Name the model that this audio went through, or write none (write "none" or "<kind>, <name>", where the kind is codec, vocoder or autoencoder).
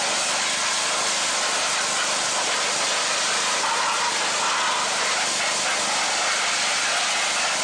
none